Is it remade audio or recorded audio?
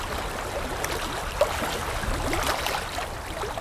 recorded